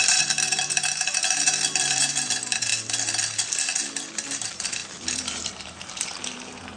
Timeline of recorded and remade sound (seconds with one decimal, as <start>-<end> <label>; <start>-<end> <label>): 0.0-2.7 remade; 2.7-4.3 recorded; 4.3-6.8 remade